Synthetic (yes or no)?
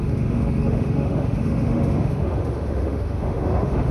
yes